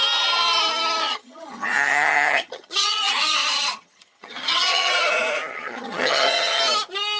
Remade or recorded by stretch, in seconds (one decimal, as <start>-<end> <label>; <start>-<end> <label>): 0.0-1.0 recorded; 1.0-4.9 remade; 4.9-5.5 recorded; 5.5-6.6 remade; 6.6-7.2 recorded